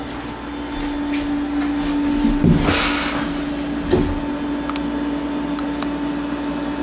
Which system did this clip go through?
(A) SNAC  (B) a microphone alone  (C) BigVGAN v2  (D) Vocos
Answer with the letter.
B